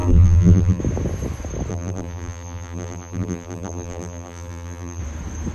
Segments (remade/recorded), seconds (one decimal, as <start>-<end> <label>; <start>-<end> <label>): 0.0-0.8 remade; 0.8-1.7 recorded; 1.7-5.0 remade; 5.0-5.5 recorded